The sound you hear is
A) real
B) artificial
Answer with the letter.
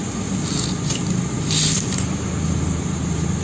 A